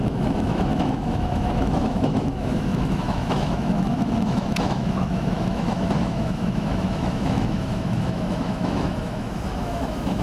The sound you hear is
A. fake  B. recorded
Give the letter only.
A